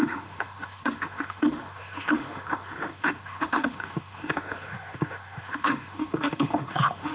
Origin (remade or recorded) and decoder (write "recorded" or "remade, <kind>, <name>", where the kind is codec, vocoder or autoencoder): remade, autoencoder, DAC-VAE